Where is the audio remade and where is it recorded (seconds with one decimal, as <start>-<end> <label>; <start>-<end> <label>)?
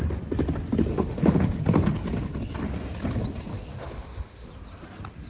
0.0-0.9 recorded; 0.9-1.6 remade; 1.6-3.5 recorded; 3.5-4.5 remade; 4.5-5.3 recorded